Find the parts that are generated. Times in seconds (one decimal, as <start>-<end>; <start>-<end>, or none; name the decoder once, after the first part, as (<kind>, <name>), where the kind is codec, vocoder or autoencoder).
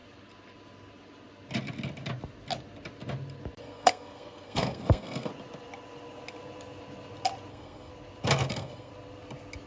3.6-5.3 (codec, SNAC); 7.5-7.9; 8.5-8.9